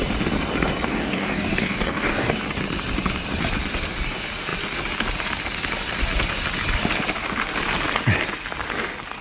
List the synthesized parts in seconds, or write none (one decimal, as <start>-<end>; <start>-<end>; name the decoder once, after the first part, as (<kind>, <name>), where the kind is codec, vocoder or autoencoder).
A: 0.9-2.4 (codec, DAC)